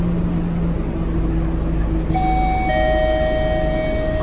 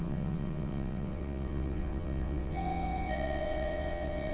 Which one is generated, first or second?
second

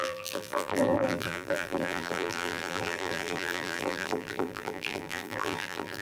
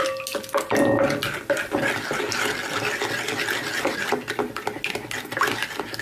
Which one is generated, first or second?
first